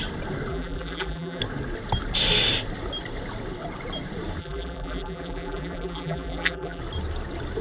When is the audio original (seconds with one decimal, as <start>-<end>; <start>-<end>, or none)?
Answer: 0.0-0.5; 1.4-4.4; 6.8-7.6